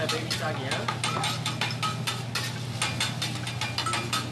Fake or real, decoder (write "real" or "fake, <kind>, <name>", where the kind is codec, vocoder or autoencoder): real